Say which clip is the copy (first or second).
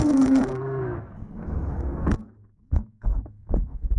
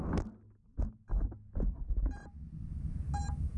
first